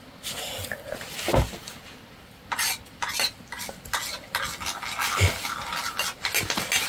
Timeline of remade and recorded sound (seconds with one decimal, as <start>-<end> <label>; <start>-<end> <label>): 0.0-6.9 recorded